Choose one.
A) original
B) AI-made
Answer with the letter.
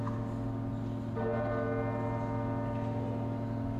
A